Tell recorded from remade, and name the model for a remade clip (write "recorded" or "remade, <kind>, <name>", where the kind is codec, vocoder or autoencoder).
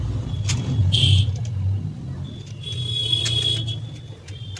recorded